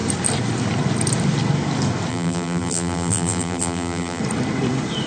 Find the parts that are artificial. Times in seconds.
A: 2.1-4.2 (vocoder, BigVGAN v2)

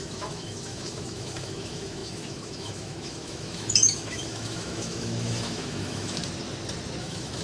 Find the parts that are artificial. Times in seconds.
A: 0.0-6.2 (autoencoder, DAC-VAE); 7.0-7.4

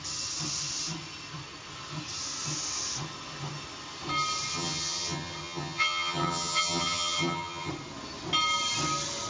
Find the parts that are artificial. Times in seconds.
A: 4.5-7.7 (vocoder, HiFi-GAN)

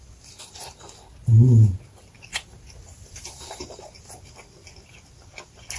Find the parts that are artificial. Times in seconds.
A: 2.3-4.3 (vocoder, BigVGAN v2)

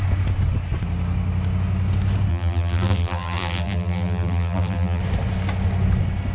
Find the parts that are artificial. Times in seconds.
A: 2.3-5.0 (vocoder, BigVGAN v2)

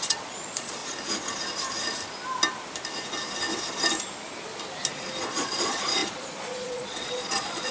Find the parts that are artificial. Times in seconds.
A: 0.0-0.8 (vocoder, Vocos); 5.2-7.7

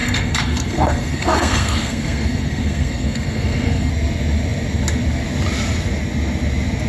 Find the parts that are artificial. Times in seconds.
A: 0.0-3.9 (codec, SNAC)